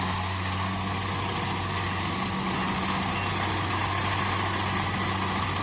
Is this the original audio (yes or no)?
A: yes